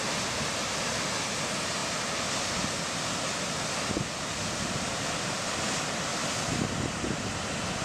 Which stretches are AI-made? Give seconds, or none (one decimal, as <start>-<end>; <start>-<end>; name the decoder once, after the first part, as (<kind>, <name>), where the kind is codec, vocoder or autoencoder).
none